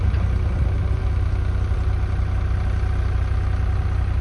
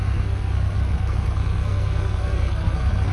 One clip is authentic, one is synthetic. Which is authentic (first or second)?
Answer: first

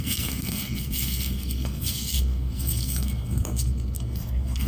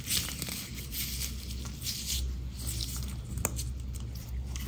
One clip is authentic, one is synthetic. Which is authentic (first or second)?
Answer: second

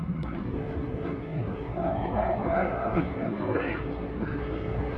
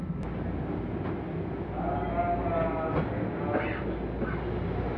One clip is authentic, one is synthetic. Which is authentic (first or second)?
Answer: second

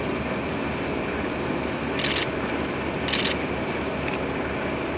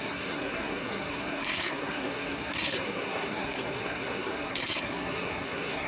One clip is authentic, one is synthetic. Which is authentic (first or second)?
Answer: first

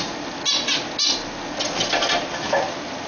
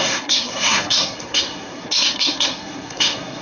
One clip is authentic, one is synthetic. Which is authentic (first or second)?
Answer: first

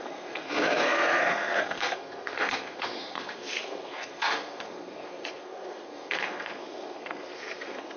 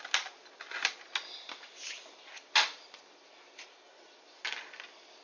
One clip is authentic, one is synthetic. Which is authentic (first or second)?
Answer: second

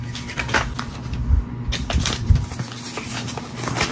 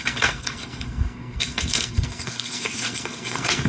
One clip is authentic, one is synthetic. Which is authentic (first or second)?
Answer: first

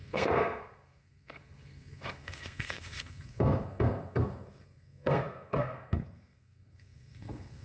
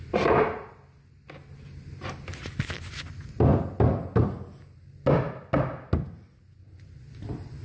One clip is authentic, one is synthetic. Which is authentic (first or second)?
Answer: second